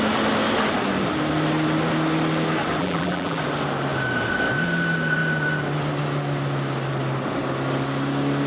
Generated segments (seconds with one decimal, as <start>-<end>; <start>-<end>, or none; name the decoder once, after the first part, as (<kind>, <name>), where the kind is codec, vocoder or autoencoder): 2.8-3.4 (vocoder, BigVGAN v2)